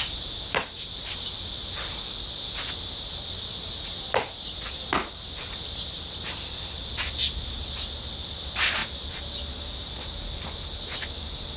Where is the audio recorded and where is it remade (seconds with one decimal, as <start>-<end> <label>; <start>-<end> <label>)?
0.0-11.6 recorded